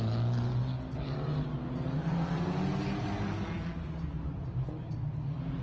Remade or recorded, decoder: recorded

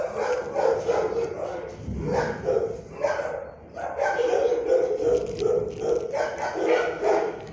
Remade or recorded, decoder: recorded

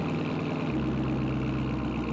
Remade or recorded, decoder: recorded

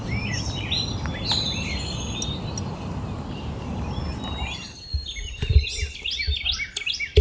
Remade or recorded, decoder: recorded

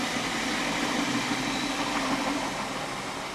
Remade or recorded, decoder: recorded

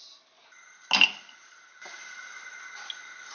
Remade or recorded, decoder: recorded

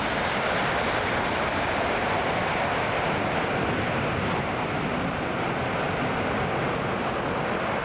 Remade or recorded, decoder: recorded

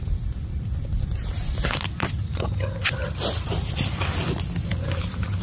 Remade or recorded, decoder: remade, vocoder, BigVGAN v2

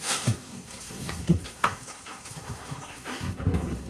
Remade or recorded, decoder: remade, codec, SNAC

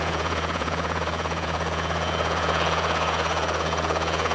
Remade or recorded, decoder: remade, vocoder, Vocos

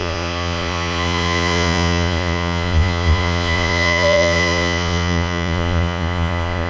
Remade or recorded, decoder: remade, vocoder, Vocos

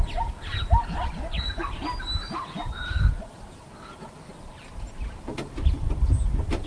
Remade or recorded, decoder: recorded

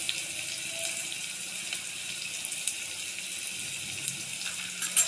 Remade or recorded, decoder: recorded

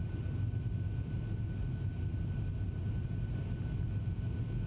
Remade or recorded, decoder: recorded